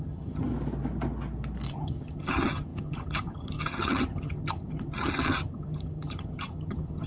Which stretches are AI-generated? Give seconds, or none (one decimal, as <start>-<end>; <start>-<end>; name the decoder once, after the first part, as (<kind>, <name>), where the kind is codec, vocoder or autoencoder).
0.0-0.5 (vocoder, HiFi-GAN); 1.7-7.1